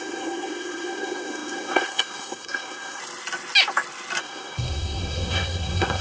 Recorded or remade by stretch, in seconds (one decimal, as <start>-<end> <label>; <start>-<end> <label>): 0.0-3.0 remade; 3.0-4.2 recorded; 4.2-6.0 remade